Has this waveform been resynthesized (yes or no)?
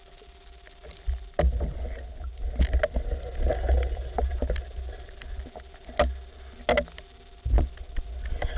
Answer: no